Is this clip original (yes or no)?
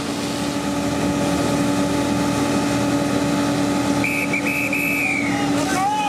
yes